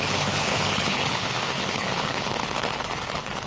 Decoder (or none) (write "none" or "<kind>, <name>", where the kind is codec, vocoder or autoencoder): codec, HILCodec